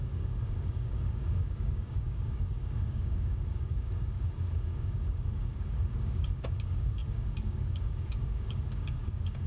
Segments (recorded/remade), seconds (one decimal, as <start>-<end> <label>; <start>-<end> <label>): 0.0-9.5 remade